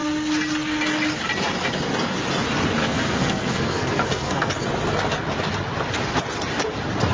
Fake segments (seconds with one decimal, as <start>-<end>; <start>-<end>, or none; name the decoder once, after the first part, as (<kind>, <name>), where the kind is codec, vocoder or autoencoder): 2.8-4.5 (codec, SNAC)

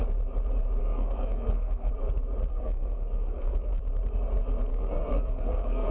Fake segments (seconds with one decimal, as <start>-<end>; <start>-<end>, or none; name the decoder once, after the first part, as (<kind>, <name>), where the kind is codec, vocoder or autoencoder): 0.8-1.9 (codec, SNAC); 2.5-3.8; 4.7-5.9

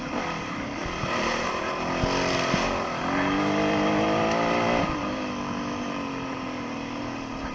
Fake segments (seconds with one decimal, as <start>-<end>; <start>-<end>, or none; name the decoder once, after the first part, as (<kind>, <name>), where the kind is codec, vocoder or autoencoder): none

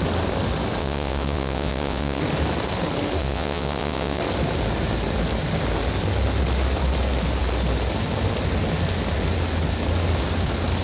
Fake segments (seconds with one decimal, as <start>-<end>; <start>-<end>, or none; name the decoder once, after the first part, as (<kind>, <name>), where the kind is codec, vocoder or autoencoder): 0.8-2.2 (vocoder, WaveNeXt); 3.2-4.2

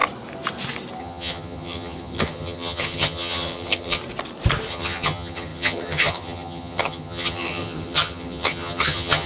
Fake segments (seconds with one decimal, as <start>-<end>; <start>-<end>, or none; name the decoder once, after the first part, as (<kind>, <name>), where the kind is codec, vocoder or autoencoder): 1.0-4.0 (vocoder, HiFi-GAN); 4.7-9.3

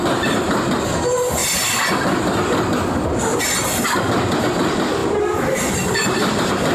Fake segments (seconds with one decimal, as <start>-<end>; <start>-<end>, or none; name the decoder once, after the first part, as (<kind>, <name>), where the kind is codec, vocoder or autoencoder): none

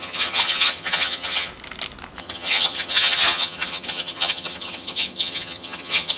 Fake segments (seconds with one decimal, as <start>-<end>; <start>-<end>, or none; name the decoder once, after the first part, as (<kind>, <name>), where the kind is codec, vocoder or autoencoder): 0.0-1.5 (vocoder, HiFi-GAN); 2.2-6.2

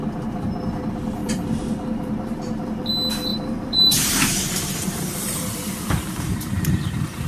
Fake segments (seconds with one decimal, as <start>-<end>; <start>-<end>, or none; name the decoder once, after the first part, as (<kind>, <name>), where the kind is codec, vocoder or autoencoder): 1.2-2.8 (vocoder, BigVGAN v2); 3.3-6.7